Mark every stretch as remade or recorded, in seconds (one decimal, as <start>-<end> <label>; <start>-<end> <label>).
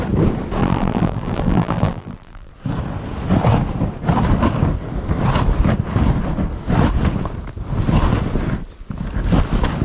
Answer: 0.0-0.6 recorded; 0.6-2.5 remade; 2.5-9.8 recorded